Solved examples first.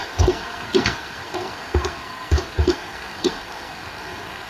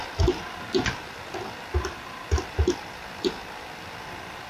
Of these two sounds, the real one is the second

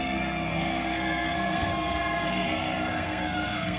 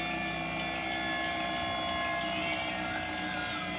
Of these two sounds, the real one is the second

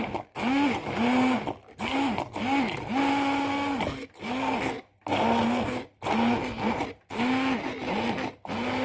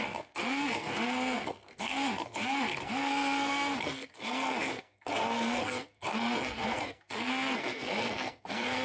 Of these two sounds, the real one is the first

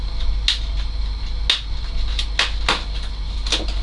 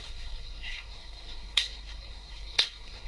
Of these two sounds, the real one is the first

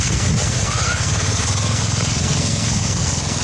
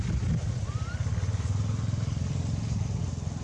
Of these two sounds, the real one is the second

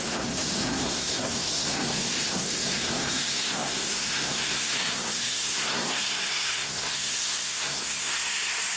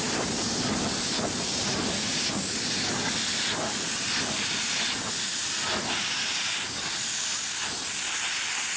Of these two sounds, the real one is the second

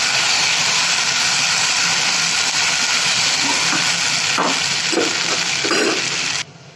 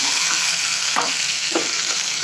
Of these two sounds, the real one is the first